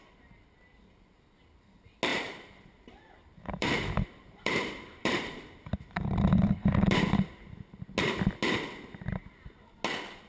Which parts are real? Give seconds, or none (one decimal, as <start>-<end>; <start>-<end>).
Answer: 0.0-2.1; 7.0-10.3

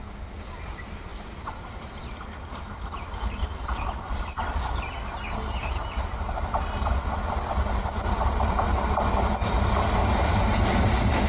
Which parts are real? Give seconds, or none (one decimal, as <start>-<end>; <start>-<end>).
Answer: 0.0-1.1; 2.6-3.5; 4.9-7.2; 8.6-11.3